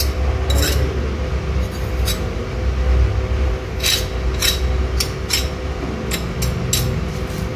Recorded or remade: recorded